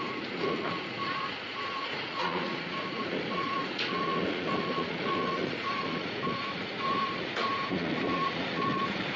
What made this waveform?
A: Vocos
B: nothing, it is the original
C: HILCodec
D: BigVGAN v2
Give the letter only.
A